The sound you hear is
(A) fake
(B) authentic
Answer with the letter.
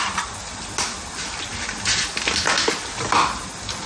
B